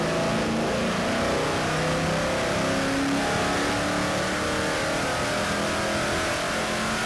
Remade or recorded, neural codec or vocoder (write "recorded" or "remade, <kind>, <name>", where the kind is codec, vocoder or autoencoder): recorded